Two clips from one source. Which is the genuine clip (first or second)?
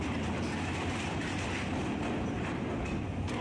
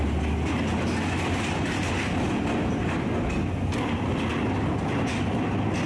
second